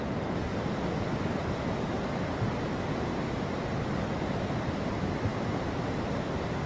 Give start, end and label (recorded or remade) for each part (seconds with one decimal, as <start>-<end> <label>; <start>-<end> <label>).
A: 0.0-5.3 recorded; 5.3-6.0 remade; 6.0-6.7 recorded